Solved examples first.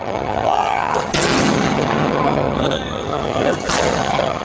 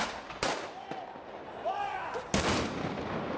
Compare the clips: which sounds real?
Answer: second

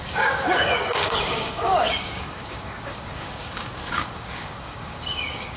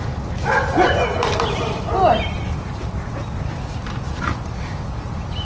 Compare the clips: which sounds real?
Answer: second